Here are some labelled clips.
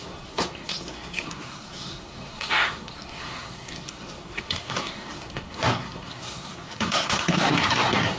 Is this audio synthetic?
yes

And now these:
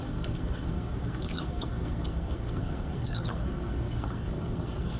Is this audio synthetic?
yes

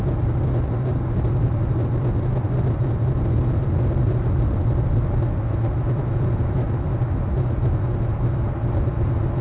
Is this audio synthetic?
no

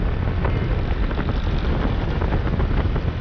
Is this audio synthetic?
no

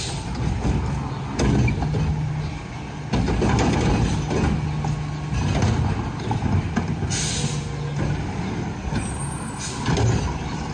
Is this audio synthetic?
no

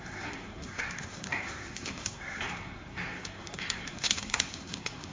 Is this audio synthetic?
yes